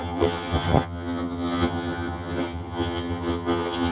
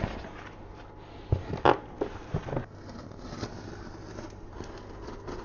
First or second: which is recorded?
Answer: second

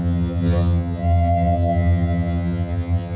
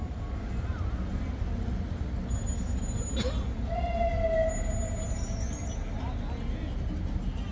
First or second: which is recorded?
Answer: second